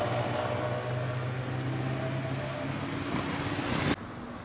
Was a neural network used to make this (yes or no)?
no